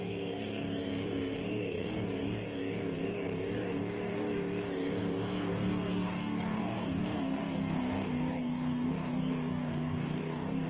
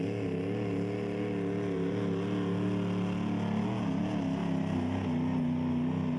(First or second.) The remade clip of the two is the first